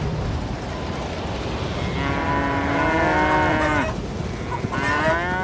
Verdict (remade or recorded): recorded